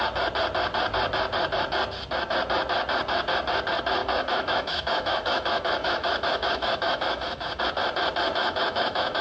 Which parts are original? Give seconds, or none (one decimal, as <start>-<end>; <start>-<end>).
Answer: 0.0-4.0; 7.6-8.4